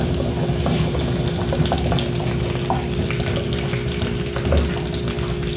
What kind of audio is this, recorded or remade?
recorded